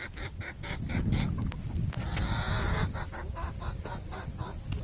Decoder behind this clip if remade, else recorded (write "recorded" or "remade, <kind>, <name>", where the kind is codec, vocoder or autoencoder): recorded